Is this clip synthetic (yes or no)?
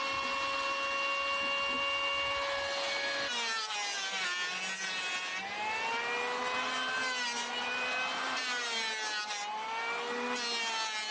no